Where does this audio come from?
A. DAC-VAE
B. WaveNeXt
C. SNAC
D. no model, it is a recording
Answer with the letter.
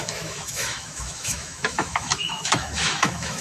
A